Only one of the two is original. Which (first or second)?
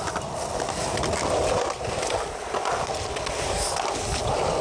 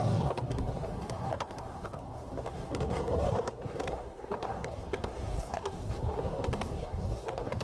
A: first